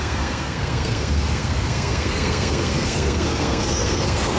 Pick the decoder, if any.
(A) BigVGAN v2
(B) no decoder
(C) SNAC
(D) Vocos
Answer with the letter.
C